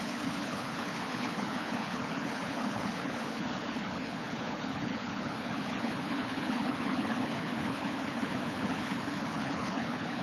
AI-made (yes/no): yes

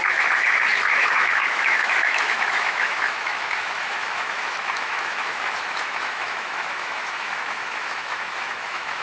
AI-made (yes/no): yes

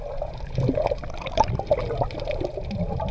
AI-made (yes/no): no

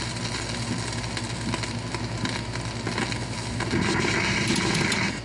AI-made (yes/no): no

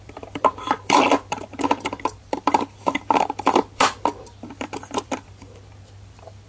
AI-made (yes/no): yes